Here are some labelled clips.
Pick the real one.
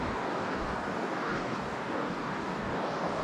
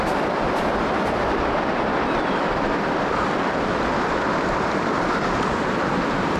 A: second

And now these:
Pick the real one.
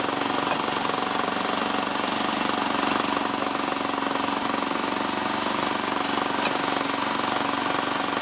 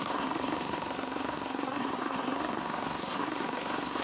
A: first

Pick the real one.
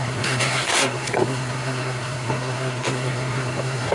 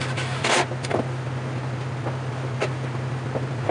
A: second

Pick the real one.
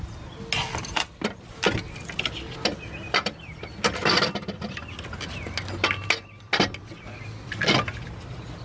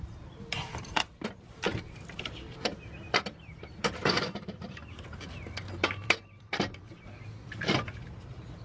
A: first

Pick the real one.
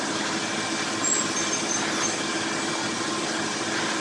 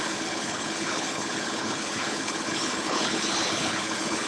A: first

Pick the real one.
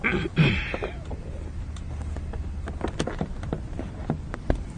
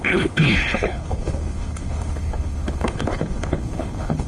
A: first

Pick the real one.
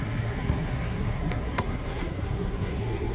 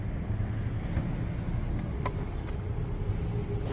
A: second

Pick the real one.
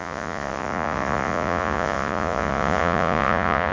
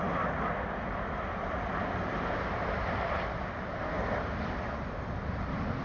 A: second